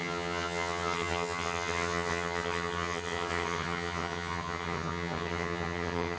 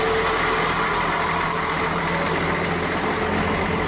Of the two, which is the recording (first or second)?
second